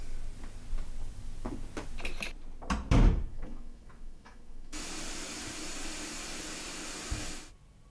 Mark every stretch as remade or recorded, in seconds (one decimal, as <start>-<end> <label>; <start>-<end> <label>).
0.0-3.3 recorded; 3.3-4.8 remade; 4.8-7.9 recorded